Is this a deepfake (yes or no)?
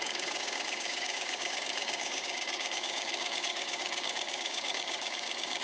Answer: yes